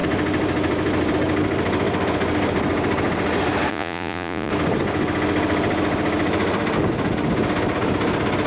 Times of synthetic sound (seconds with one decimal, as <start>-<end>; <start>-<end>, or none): 3.7-4.5